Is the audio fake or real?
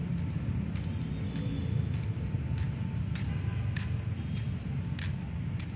real